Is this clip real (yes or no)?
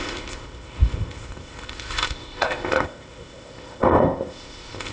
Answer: no